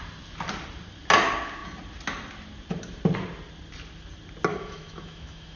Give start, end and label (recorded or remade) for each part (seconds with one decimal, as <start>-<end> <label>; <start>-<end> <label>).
0.0-4.5 recorded; 4.5-5.6 remade